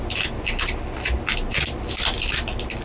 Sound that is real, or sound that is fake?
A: real